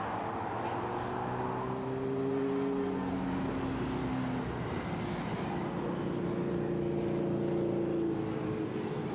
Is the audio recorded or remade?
recorded